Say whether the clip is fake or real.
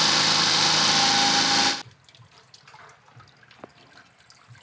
real